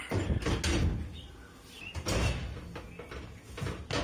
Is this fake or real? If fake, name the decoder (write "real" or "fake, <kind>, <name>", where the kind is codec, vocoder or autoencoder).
real